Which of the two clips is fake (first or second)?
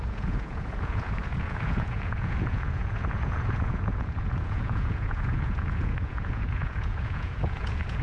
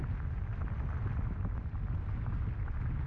first